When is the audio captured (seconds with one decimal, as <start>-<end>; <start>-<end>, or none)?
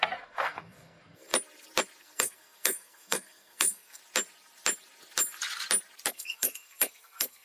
1.3-2.0; 4.0-6.1